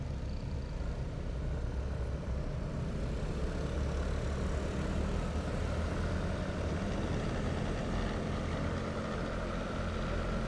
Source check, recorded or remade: recorded